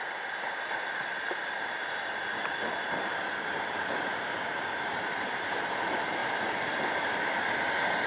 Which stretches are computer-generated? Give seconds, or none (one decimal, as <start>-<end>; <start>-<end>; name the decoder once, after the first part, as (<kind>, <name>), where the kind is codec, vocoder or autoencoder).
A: 4.1-5.7 (vocoder, BigVGAN v2); 6.2-7.5